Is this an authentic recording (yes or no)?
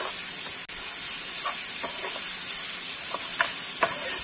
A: yes